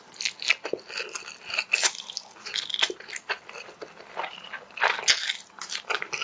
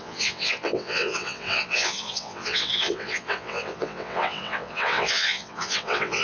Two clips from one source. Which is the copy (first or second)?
second